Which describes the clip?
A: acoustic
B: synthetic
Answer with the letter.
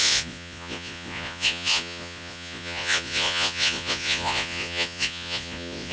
B